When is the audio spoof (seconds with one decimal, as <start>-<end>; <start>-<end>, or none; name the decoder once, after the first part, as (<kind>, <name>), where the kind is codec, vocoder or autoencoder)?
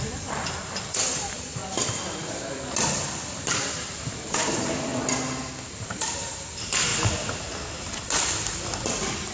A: 0.0-1.6 (vocoder, BigVGAN v2); 3.6-4.9; 5.7-6.9